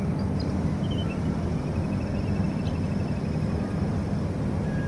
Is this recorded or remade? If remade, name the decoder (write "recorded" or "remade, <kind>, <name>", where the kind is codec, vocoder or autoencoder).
recorded